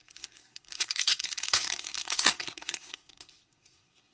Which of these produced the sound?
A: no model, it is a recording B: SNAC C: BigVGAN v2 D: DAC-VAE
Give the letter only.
B